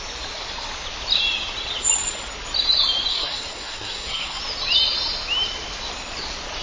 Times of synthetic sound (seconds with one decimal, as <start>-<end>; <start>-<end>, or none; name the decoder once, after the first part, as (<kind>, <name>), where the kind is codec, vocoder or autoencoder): 3.1-4.4 (codec, SNAC)